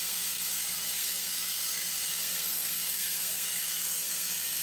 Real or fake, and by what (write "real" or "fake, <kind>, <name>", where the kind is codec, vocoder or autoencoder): fake, codec, SNAC